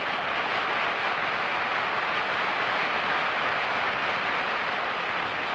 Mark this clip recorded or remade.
recorded